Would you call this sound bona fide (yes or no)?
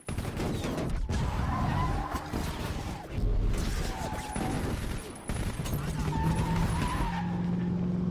yes